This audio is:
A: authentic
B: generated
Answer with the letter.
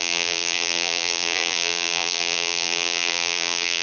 B